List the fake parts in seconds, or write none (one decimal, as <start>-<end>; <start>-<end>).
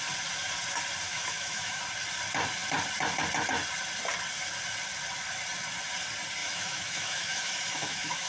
1.1-1.8; 6.4-8.3